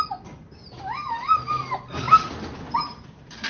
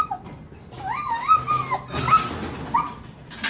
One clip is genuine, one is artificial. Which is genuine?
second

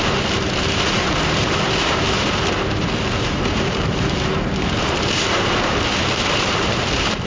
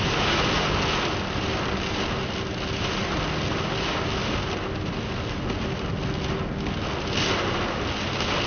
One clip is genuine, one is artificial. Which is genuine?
second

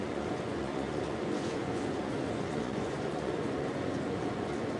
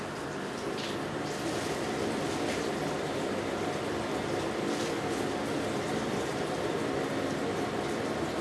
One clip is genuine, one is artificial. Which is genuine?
second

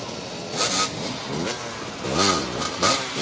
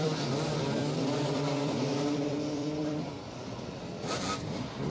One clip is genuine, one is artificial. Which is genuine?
first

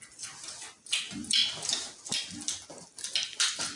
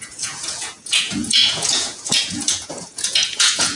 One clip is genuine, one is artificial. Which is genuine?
first